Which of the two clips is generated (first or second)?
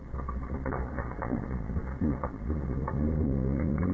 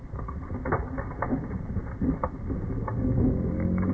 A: first